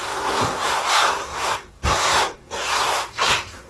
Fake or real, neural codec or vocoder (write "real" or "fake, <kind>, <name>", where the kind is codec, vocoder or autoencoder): fake, codec, SNAC